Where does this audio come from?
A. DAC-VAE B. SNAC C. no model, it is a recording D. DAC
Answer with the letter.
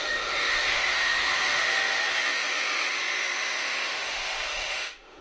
A